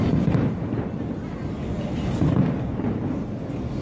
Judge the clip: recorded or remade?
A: recorded